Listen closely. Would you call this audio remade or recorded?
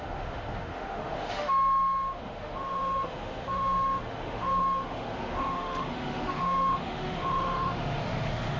remade